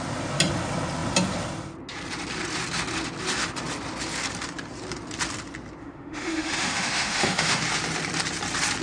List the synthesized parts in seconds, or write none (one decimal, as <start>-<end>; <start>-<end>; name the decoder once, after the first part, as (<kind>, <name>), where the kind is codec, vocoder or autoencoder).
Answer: 5.8-7.6 (autoencoder, DAC-VAE)